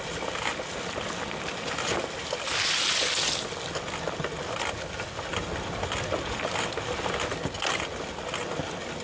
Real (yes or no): yes